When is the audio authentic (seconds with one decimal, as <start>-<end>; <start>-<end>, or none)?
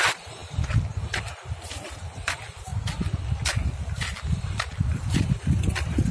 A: 2.7-5.1